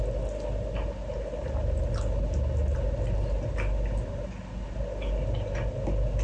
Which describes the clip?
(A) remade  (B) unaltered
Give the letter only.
B